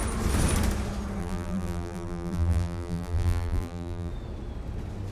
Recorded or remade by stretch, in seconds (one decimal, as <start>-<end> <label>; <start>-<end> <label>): 0.0-1.2 recorded; 1.2-4.1 remade; 4.1-5.1 recorded